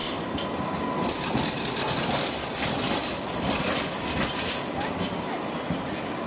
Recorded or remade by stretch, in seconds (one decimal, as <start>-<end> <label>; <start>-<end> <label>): 0.0-3.0 recorded; 3.0-3.9 remade; 3.9-6.3 recorded

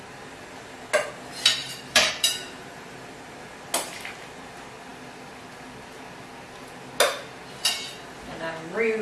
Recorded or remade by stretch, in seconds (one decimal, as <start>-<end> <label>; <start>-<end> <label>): 0.0-1.6 recorded; 1.6-3.1 remade; 3.1-9.0 recorded